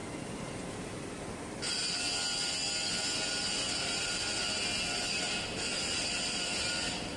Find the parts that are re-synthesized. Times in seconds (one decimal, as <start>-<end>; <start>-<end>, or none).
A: none

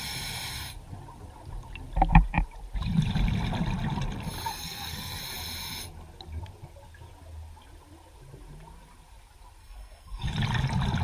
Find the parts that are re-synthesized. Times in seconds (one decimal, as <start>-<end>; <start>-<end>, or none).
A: 4.5-5.2; 9.6-10.3

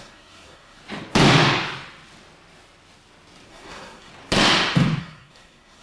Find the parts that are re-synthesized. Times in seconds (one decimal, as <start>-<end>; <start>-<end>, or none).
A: 0.0-0.8; 3.5-4.1; 5.0-5.8

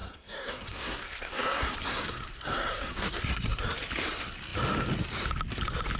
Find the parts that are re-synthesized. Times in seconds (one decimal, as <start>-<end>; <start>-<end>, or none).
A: 0.0-3.6

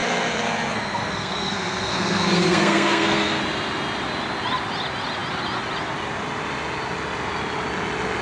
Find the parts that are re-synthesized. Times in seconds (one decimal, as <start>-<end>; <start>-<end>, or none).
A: 0.0-3.4